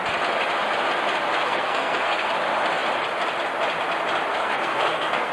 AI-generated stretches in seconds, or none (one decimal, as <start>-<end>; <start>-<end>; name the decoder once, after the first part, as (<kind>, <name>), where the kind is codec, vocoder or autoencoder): 1.3-2.3 (codec, SNAC); 4.3-5.3